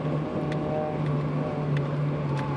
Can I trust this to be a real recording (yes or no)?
yes